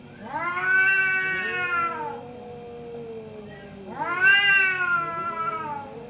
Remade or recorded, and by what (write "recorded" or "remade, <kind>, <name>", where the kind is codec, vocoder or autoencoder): recorded